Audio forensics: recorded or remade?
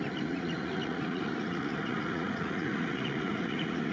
remade